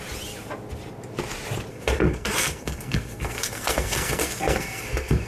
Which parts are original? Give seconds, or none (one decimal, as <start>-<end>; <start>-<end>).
0.0-1.7